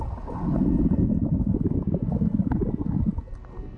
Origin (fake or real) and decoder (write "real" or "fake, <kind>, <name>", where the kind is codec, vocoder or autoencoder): real